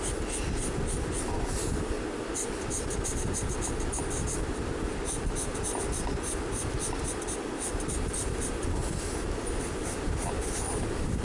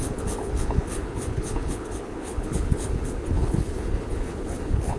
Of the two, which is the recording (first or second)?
first